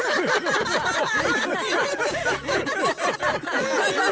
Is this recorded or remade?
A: recorded